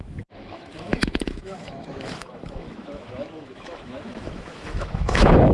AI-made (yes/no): yes